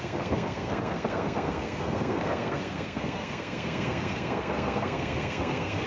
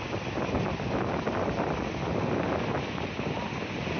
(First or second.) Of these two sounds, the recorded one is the second